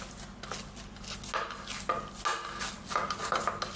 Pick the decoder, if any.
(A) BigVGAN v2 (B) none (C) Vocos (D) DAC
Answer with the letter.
B